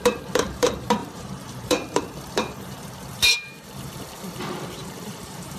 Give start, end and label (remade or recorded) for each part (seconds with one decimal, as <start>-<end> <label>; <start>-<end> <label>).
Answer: 0.0-5.6 remade